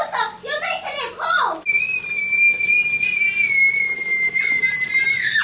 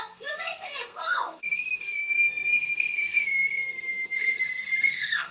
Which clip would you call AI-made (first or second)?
second